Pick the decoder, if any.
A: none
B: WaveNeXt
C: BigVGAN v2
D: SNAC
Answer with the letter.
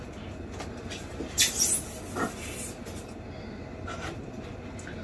A